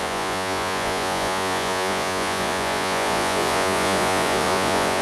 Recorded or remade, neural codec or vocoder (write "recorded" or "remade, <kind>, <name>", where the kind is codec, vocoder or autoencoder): remade, vocoder, Vocos